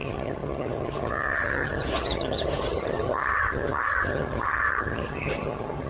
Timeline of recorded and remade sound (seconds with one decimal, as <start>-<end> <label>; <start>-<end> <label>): 0.0-5.9 remade